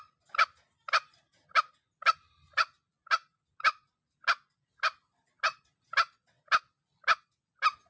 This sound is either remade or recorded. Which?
recorded